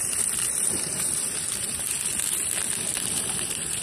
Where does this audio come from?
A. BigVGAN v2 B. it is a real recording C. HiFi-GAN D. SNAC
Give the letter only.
A